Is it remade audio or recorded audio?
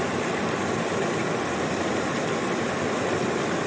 recorded